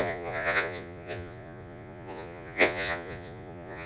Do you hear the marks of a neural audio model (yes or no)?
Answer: yes